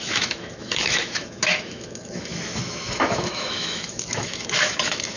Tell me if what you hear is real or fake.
fake